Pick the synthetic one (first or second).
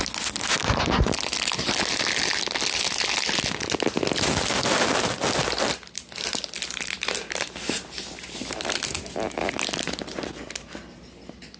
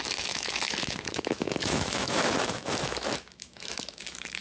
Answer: second